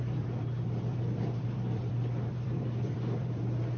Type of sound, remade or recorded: remade